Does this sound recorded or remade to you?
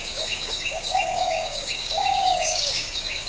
remade